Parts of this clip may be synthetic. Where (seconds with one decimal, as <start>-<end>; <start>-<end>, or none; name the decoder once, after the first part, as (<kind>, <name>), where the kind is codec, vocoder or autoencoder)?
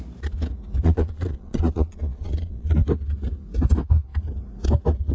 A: 0.8-2.8 (vocoder, Vocos)